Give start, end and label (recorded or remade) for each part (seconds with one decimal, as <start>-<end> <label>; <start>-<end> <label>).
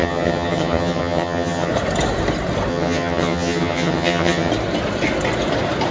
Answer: 0.0-1.7 remade; 1.7-2.7 recorded; 2.7-4.5 remade; 4.5-5.9 recorded